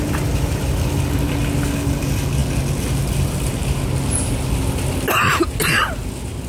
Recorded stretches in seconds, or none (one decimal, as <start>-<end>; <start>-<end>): 0.0-6.5